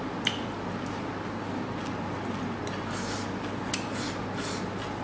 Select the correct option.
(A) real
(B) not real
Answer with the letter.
A